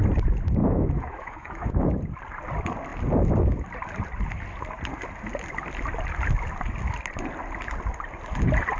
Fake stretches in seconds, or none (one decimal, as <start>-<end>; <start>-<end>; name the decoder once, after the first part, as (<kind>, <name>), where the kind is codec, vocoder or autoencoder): 0.6-1.8 (autoencoder, DAC-VAE)